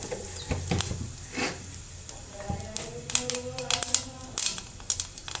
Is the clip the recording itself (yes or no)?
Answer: yes